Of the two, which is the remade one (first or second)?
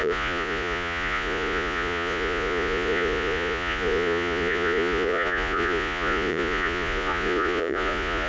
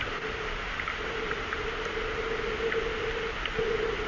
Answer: first